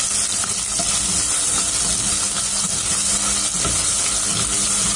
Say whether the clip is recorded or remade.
recorded